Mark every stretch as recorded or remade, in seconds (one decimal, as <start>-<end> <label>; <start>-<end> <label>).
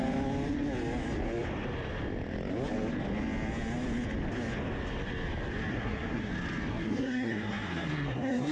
0.0-5.7 recorded; 5.7-6.3 remade; 6.3-6.7 recorded; 6.7-8.5 remade